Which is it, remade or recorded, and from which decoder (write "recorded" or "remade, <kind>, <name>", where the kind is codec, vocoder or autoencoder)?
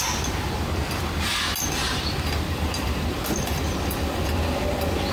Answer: recorded